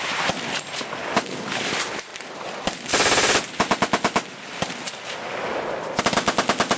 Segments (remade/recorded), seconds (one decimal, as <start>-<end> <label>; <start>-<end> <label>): 0.0-6.8 recorded